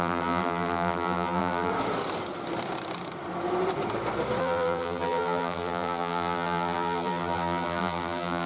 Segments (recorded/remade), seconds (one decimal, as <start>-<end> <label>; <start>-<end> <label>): 0.0-1.7 remade; 1.7-4.4 recorded; 4.4-8.5 remade